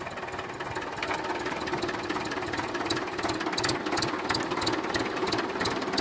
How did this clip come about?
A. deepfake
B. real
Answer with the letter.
B